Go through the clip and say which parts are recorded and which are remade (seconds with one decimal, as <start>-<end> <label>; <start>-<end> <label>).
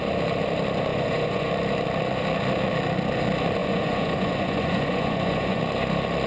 0.0-0.9 recorded; 0.9-1.5 remade; 1.5-3.6 recorded; 3.6-5.6 remade; 5.6-6.3 recorded